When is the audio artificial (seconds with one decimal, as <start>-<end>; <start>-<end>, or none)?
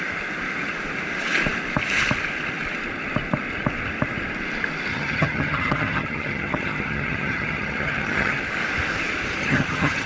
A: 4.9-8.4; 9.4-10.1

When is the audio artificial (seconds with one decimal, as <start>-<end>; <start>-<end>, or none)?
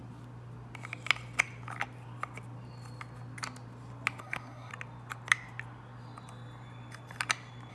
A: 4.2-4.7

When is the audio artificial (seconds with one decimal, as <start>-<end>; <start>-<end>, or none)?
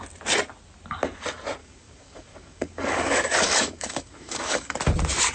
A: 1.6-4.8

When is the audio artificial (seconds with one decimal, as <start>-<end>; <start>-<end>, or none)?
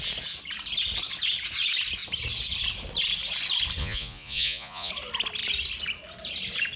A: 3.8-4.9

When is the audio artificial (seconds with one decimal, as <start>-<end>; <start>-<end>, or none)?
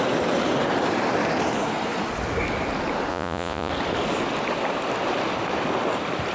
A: 3.1-3.7